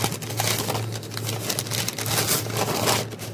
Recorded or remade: recorded